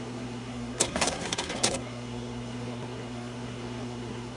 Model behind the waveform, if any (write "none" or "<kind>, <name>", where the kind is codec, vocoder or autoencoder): codec, SNAC